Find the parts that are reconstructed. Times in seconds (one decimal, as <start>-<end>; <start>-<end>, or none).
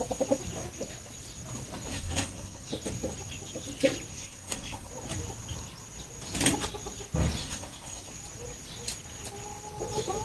1.9-2.7; 4.1-4.9; 7.4-8.1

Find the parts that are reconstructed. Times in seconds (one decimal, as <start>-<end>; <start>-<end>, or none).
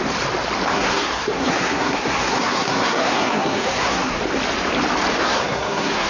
0.7-4.2; 5.2-6.1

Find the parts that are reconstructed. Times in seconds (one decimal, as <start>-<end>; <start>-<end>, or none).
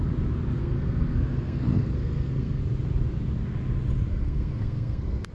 0.6-2.6; 4.1-5.3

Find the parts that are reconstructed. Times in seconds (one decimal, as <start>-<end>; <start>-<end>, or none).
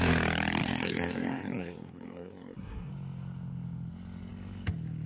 0.6-2.9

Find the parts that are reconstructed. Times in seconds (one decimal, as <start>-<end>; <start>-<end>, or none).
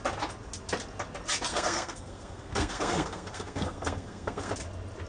1.5-4.5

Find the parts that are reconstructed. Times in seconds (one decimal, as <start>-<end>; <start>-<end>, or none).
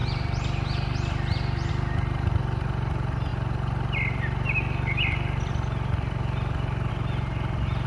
none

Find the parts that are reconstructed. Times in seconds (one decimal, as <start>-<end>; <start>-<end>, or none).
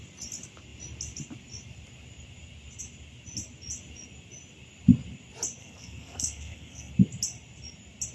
5.6-6.9